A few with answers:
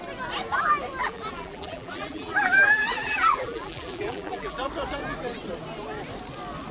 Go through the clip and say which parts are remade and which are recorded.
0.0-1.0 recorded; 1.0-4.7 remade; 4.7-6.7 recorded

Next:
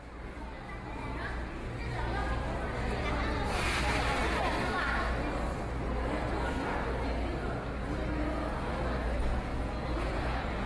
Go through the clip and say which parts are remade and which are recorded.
0.0-9.5 recorded; 9.5-10.7 remade

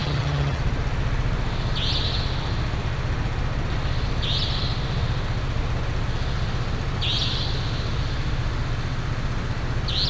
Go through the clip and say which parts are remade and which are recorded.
0.0-0.6 remade; 0.6-10.1 recorded